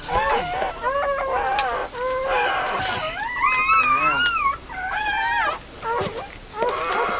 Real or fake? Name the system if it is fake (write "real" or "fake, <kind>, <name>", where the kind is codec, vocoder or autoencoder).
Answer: real